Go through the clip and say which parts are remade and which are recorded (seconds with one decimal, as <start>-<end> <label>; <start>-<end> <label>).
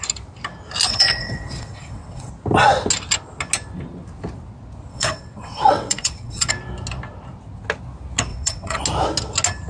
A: 0.0-0.9 recorded; 0.9-2.3 remade; 2.3-4.9 recorded; 4.9-6.5 remade; 6.5-8.3 recorded; 8.3-8.8 remade; 8.8-9.7 recorded